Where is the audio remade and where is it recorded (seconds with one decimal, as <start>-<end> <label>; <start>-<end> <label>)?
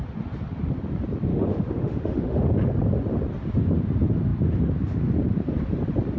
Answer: 0.0-1.3 recorded; 1.3-2.5 remade; 2.5-6.2 recorded